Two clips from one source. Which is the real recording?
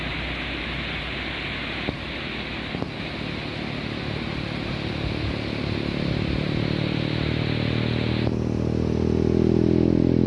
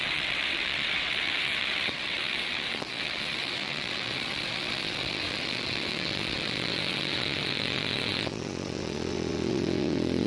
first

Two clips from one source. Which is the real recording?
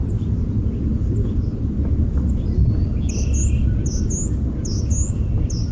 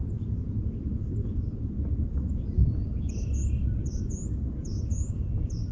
first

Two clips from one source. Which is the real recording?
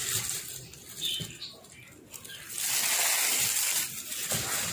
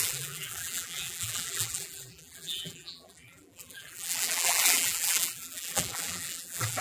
first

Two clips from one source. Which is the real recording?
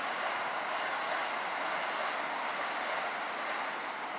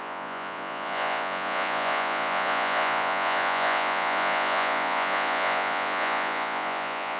first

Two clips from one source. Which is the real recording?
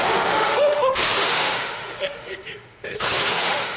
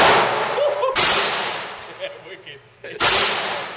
second